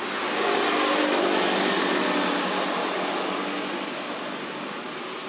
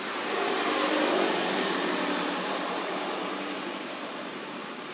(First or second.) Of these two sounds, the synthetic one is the second